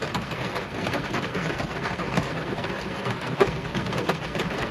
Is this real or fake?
fake